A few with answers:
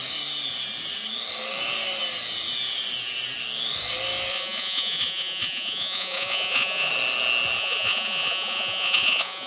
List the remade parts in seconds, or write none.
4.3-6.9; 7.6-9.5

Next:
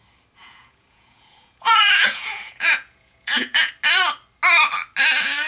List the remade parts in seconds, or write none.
0.4-3.7

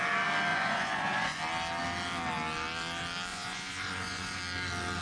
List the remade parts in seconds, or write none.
0.5-1.4; 3.3-4.4

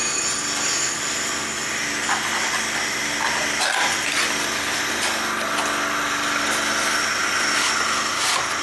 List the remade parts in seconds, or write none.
none

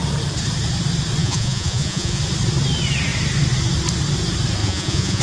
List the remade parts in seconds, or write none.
1.2-2.2; 4.6-5.2

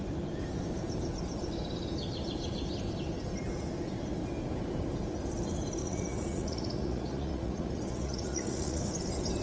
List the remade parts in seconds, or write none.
5.8-8.8

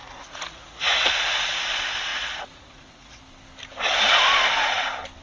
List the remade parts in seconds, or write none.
0.0-1.1; 2.1-3.2